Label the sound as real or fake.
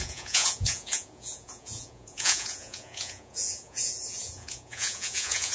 fake